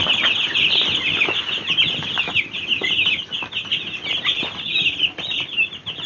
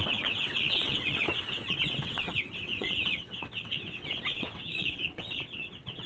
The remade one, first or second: second